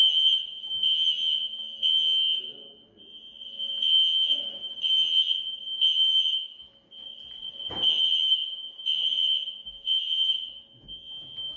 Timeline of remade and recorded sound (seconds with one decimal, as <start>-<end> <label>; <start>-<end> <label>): 0.0-7.0 recorded; 7.0-7.7 remade; 7.7-11.6 recorded